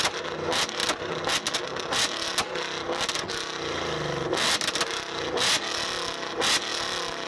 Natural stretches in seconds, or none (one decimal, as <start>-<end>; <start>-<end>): 0.0-7.3